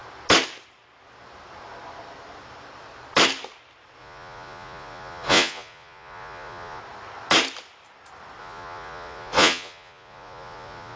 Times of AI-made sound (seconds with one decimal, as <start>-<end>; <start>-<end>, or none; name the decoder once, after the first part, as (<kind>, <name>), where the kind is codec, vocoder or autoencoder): 4.0-6.8 (vocoder, Vocos); 8.4-11.0